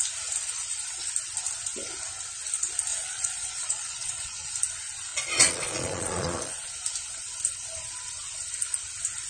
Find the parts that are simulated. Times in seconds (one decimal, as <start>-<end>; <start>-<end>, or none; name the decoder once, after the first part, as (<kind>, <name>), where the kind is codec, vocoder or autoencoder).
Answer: 2.9-4.5 (vocoder, Vocos); 5.1-6.7